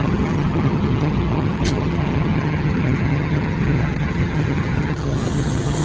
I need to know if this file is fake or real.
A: fake